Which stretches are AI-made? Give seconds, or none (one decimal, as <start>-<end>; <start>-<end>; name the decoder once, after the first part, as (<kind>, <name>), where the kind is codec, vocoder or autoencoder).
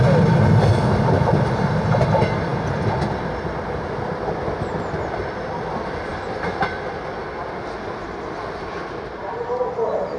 none